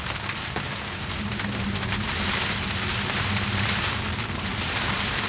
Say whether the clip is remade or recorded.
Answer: recorded